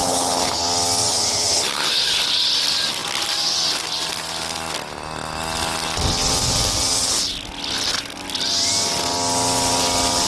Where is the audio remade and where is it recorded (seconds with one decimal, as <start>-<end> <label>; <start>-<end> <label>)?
0.0-0.6 remade; 0.6-1.1 recorded; 1.1-2.2 remade; 2.2-10.3 recorded